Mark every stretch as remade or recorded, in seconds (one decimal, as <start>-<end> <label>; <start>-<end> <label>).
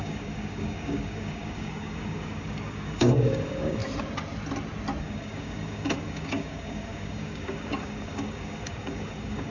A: 0.0-3.8 remade; 3.8-5.0 recorded; 5.0-9.5 remade